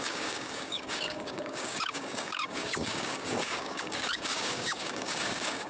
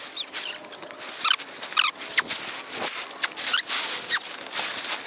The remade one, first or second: first